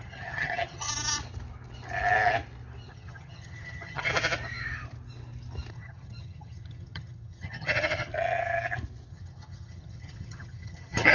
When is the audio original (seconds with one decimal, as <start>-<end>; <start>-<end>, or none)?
0.9-2.9; 4.1-5.7; 8.1-9.1